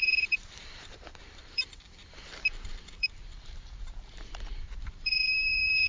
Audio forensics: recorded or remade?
remade